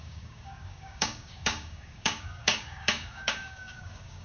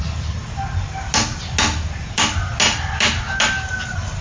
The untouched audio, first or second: second